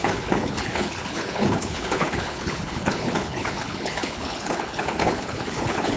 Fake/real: fake